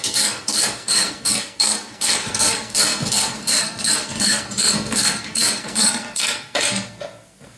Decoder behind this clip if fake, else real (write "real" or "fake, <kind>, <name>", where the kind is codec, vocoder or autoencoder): fake, codec, SNAC